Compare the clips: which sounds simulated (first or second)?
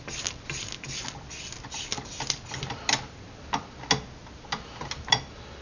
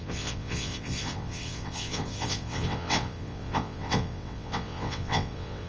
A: second